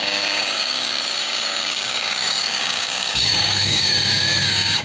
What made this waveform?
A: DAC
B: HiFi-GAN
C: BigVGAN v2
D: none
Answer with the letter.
A